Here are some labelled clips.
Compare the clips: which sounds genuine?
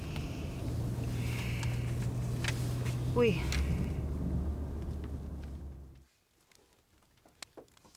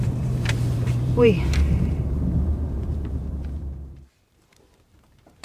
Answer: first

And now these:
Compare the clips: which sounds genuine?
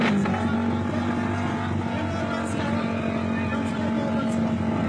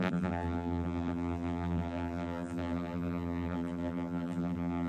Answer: first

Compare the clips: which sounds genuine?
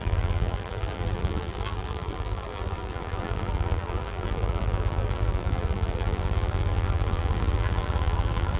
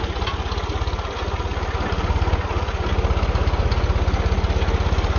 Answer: second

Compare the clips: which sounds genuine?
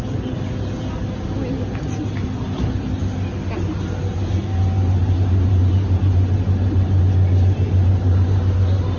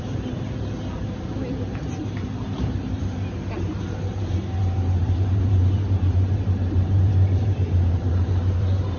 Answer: first